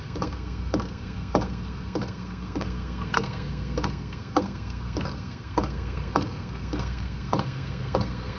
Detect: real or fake fake